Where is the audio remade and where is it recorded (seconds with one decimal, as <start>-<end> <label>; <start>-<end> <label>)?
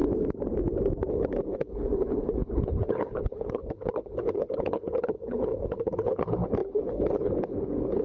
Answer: 0.0-1.1 recorded; 1.1-8.0 remade